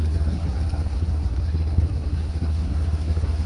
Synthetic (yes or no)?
yes